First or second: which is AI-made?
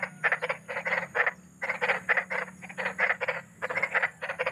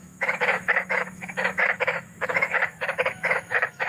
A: second